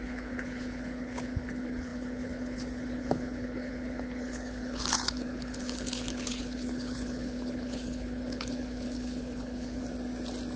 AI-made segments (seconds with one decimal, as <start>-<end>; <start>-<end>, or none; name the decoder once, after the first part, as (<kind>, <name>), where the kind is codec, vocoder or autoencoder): 0.0-9.8 (codec, HILCodec)